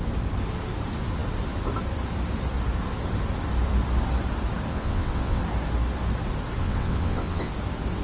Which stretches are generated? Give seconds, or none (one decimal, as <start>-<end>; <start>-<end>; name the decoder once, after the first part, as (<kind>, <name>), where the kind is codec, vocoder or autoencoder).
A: 4.7-5.4 (vocoder, WaveNeXt); 6.6-7.5